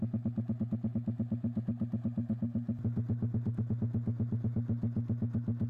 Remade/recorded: recorded